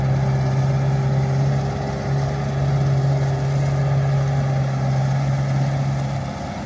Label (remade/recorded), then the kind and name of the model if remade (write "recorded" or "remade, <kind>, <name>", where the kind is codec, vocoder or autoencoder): recorded